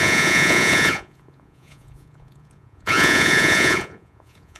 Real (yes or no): no